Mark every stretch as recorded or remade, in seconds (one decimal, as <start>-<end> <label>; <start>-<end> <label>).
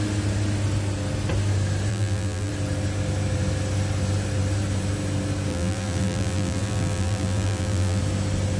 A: 0.0-1.9 recorded; 1.9-2.5 remade; 2.5-5.5 recorded; 5.5-8.0 remade; 8.0-8.6 recorded